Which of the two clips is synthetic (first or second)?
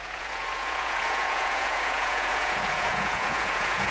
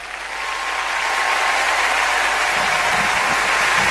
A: first